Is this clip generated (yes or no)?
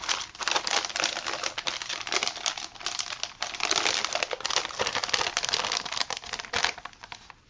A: no